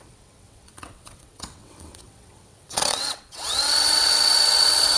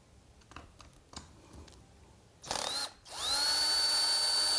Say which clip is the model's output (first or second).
first